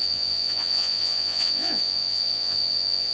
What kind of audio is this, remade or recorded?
remade